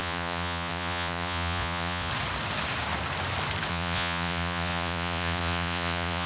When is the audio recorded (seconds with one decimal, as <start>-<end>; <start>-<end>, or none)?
2.1-3.7